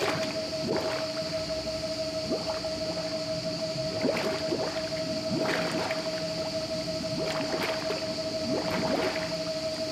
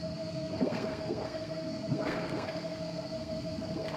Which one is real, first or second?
first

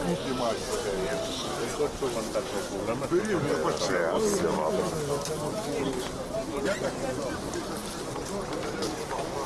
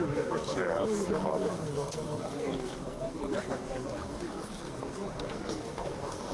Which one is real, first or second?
first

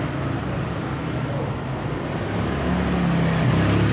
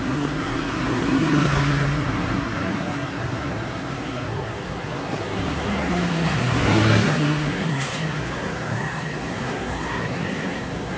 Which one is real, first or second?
first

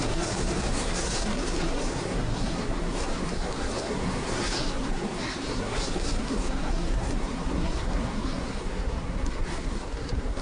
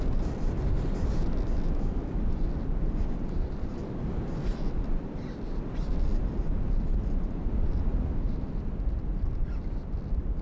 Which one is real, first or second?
second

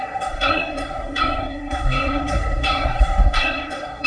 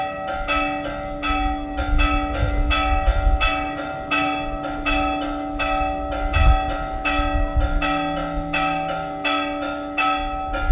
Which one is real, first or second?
second